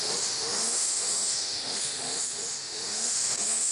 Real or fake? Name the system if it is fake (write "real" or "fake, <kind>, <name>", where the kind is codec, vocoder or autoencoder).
fake, autoencoder, DAC-VAE